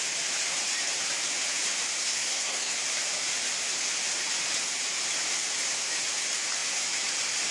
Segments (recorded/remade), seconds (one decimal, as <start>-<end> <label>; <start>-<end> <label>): 0.0-2.0 recorded; 2.0-2.8 remade; 2.8-7.5 recorded